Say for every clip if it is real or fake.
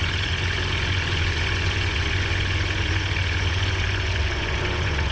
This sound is fake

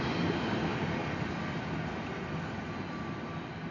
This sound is real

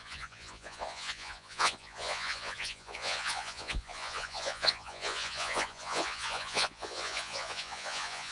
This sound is fake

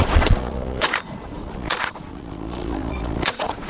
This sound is fake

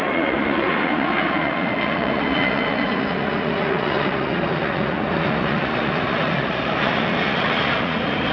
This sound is fake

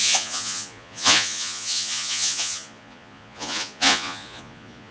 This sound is fake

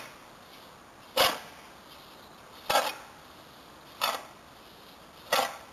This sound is real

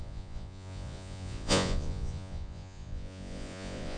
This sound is fake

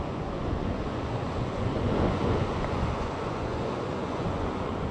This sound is fake